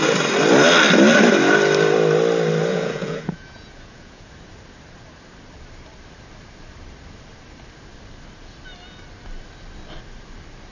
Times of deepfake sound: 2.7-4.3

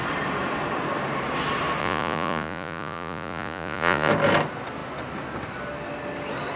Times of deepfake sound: 1.8-4.1

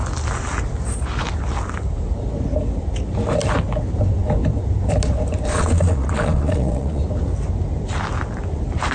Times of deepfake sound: 5.5-7.0

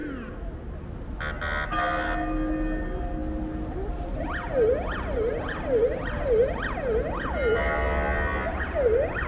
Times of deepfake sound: none